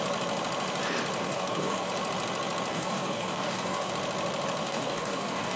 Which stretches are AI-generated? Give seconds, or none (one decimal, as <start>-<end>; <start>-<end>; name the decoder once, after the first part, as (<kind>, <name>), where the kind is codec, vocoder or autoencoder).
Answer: 1.2-1.9 (codec, DAC); 2.7-3.9; 4.6-5.6